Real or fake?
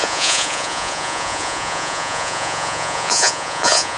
fake